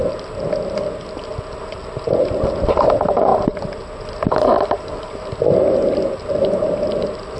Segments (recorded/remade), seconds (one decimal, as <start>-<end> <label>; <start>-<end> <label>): 0.0-7.4 recorded